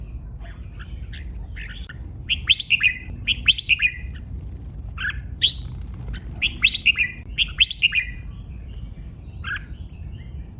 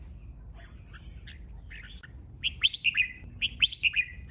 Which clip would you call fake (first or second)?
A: first